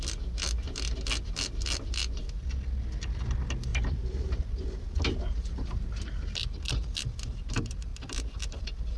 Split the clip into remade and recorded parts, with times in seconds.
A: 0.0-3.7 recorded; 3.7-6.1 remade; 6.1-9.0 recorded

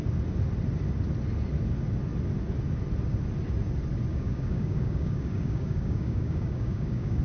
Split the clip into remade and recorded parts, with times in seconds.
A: 0.0-4.1 recorded; 4.1-7.2 remade

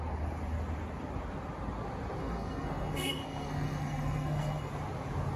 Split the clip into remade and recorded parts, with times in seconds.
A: 0.0-2.2 recorded; 2.2-4.7 remade; 4.7-5.4 recorded

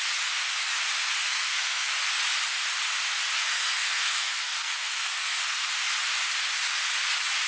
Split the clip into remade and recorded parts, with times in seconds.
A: 0.0-1.2 recorded; 1.2-1.9 remade; 1.9-3.4 recorded; 3.4-5.7 remade; 5.7-7.5 recorded

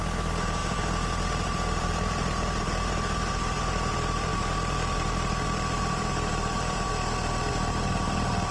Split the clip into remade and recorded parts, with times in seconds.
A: 0.0-6.9 remade; 6.9-7.5 recorded; 7.5-8.5 remade

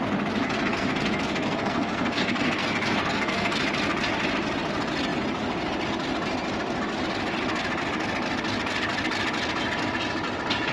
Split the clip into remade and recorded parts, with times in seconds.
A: 0.0-0.4 recorded; 0.4-3.6 remade; 3.6-10.7 recorded

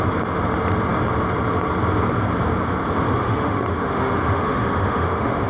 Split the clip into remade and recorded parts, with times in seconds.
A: 0.0-3.2 recorded; 3.2-5.5 remade